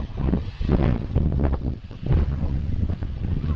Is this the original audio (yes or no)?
no